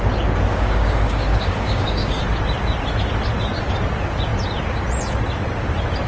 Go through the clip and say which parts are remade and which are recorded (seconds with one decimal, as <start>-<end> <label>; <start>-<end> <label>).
0.0-0.5 recorded; 0.5-2.2 remade; 2.2-6.1 recorded